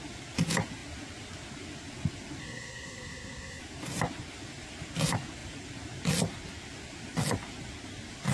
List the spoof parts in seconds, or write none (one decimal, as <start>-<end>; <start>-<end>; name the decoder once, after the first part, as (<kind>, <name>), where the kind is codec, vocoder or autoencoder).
2.4-3.6 (codec, SNAC)